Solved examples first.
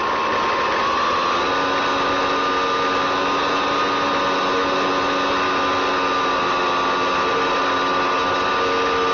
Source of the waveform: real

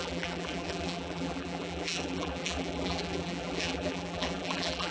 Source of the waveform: fake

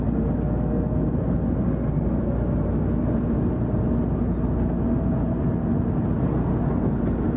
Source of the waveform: real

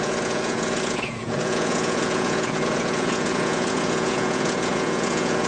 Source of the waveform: fake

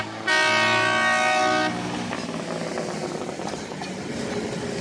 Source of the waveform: real